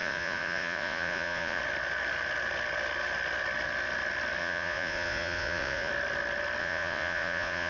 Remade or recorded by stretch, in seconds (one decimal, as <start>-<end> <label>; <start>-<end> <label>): 0.0-1.6 remade; 1.6-4.4 recorded; 4.4-5.9 remade; 5.9-6.6 recorded; 6.6-7.7 remade